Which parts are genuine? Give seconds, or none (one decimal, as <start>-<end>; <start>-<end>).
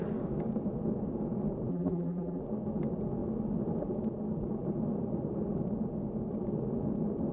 0.0-1.7; 2.4-7.3